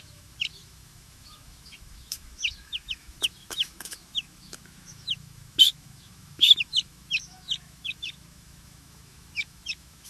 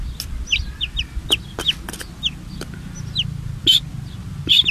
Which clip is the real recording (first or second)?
second